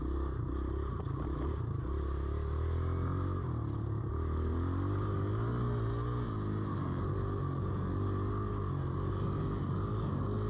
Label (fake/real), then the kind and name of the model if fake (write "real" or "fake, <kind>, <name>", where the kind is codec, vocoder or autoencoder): real